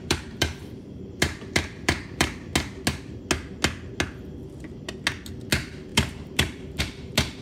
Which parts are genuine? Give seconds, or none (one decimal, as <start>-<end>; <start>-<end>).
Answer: 2.5-5.5